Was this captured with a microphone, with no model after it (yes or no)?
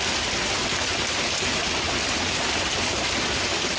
yes